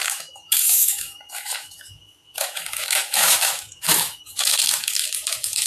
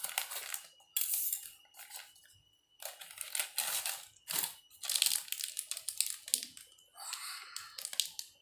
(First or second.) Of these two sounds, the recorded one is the second